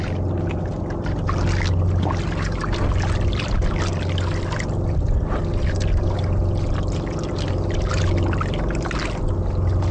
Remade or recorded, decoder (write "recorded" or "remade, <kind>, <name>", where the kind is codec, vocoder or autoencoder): recorded